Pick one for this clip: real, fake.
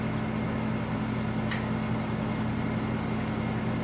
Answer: real